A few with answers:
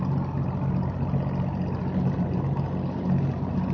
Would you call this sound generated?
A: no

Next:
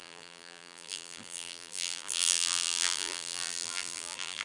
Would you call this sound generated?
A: yes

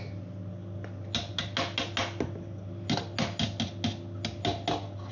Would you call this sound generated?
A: no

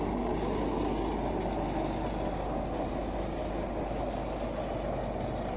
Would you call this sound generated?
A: no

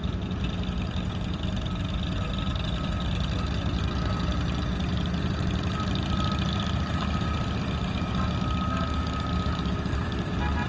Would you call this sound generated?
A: no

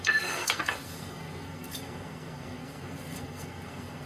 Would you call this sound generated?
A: yes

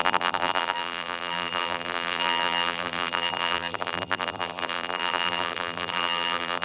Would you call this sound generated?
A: yes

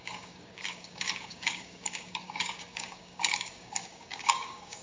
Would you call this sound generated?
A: yes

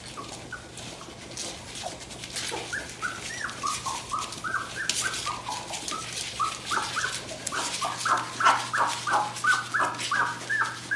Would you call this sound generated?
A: no